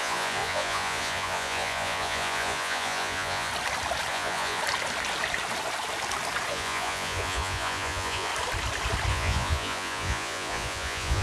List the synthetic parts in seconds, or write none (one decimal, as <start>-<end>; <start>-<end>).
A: 0.0-3.5; 4.1-4.6; 6.5-8.3; 9.1-11.2